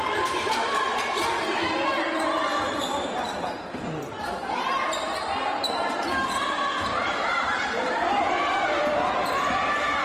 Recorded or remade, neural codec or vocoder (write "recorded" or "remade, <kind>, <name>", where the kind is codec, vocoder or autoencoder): remade, vocoder, BigVGAN v2